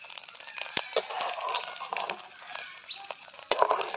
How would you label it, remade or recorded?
recorded